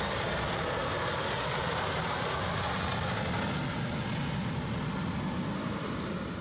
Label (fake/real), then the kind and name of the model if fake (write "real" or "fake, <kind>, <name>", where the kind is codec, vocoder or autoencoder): real